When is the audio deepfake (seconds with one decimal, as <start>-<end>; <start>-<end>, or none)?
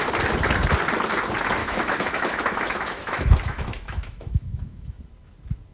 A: 1.6-5.0